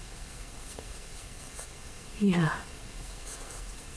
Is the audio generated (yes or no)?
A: yes